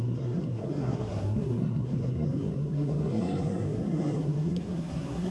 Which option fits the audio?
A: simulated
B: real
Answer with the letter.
A